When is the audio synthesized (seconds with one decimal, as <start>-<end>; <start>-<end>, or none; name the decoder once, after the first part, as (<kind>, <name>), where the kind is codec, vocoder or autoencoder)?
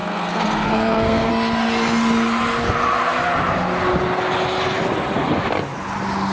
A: 0.0-1.3 (codec, SNAC)